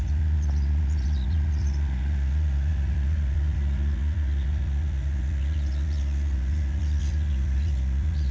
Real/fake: fake